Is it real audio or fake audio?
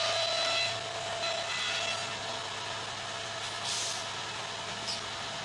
real